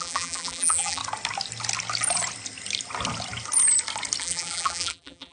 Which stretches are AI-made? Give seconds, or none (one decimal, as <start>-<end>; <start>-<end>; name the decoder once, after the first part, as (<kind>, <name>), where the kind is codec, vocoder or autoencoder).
0.0-1.0 (vocoder, BigVGAN v2); 4.2-5.3